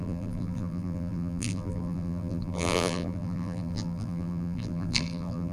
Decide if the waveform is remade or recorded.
remade